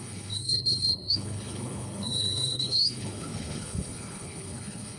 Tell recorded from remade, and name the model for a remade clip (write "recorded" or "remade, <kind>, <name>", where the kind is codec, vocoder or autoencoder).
remade, codec, HILCodec